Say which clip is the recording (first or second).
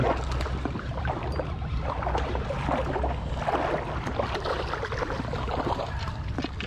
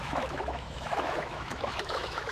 first